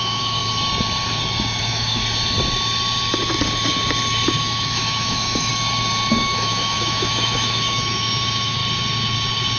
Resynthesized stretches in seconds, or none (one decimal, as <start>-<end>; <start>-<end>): 0.0-0.4; 1.6-2.0; 4.4-5.5; 6.1-8.6